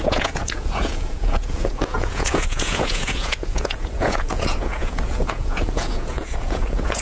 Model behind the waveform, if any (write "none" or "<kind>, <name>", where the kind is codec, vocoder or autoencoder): vocoder, Vocos